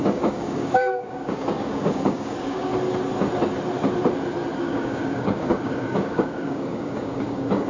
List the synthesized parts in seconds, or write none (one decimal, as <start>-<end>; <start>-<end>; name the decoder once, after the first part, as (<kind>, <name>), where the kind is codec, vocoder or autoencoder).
0.0-2.7 (codec, DAC); 4.6-7.7